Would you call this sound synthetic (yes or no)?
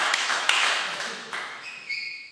yes